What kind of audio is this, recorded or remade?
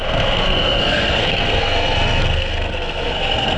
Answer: remade